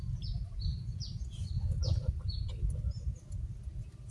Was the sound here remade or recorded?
recorded